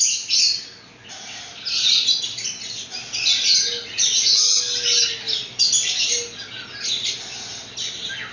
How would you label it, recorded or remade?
recorded